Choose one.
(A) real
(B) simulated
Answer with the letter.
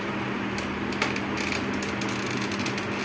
A